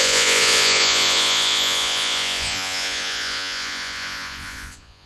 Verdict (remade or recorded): remade